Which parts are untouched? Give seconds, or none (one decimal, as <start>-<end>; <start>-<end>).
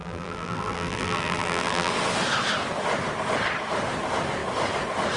1.9-5.2